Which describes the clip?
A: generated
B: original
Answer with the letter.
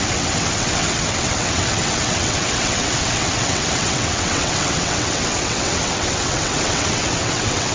A